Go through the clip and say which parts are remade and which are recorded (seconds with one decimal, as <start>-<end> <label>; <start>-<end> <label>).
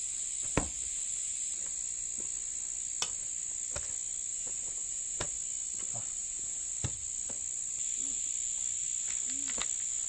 0.0-4.3 recorded; 4.3-5.3 remade; 5.3-6.2 recorded; 6.2-6.7 remade; 6.7-10.1 recorded